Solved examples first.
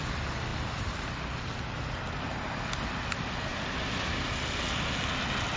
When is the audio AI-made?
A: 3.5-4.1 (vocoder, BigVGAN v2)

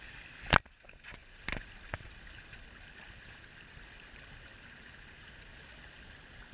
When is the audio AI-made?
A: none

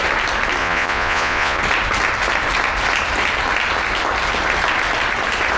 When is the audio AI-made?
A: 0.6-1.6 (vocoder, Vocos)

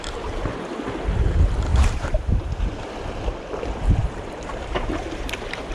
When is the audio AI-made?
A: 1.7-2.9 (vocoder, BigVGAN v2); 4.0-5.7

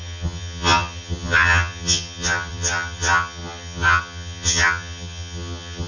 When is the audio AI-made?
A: 0.0-5.9 (vocoder, HiFi-GAN)

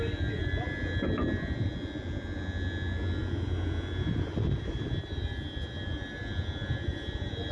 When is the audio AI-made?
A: none